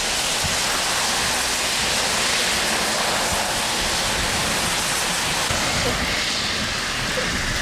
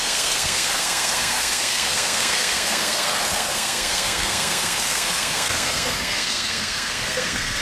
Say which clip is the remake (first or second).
second